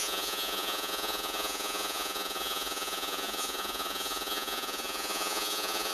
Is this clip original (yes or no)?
no